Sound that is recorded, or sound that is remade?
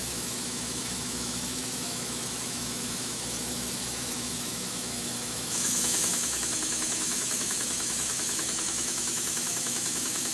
remade